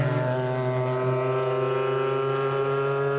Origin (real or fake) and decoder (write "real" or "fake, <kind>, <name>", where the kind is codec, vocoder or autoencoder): real